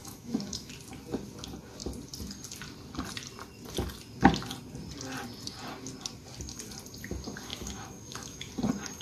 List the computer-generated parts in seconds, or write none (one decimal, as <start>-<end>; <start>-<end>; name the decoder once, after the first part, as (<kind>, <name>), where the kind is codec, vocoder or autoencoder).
0.0-0.7 (autoencoder, DAC-VAE); 7.5-8.5